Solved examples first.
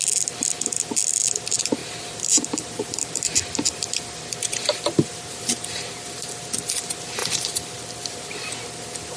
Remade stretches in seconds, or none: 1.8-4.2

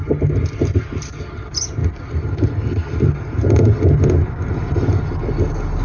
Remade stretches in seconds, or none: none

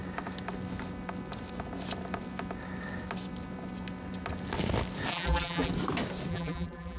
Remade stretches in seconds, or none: 5.1-5.7; 6.3-7.0

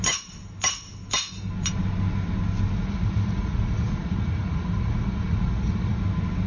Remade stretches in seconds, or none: 2.8-6.0

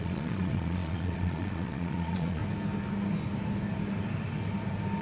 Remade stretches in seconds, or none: 0.0-2.4

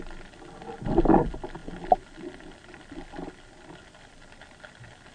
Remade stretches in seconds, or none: none

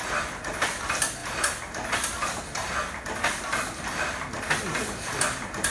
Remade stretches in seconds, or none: none